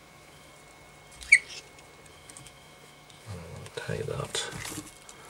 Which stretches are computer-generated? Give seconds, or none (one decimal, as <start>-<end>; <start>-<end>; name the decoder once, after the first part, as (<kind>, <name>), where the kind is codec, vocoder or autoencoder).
0.0-0.5 (autoencoder, DAC-VAE); 2.1-4.3